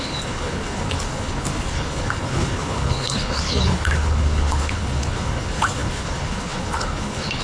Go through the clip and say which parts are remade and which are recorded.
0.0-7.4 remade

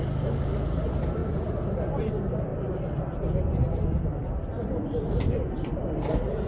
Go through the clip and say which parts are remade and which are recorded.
0.0-6.5 recorded